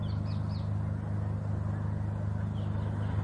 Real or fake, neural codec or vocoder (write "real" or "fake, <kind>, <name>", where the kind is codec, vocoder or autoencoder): real